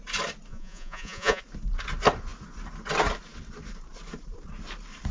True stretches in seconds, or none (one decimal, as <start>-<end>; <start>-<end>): 0.0-0.5; 1.4-5.1